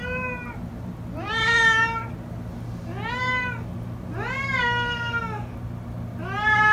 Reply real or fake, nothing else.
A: real